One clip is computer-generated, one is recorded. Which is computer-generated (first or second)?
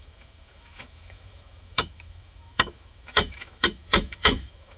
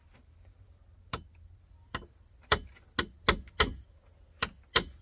first